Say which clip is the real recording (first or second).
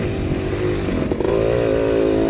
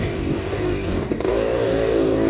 first